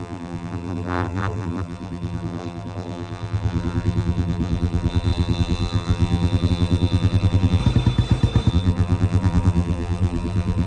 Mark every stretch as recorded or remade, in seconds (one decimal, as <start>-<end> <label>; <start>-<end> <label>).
0.0-7.6 remade; 7.6-8.5 recorded; 8.5-10.7 remade